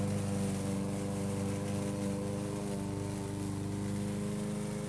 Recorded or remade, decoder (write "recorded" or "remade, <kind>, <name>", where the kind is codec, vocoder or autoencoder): recorded